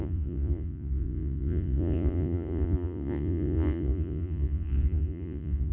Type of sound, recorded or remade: remade